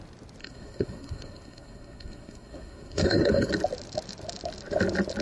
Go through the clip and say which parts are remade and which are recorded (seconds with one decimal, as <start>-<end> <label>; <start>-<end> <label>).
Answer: 0.0-0.4 recorded; 0.4-3.5 remade; 3.5-5.2 recorded